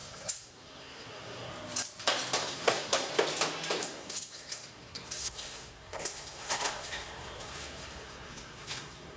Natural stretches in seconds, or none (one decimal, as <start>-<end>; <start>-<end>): 1.5-2.4; 3.1-3.8